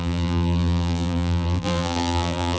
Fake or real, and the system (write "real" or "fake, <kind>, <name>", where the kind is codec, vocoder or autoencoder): fake, vocoder, BigVGAN v2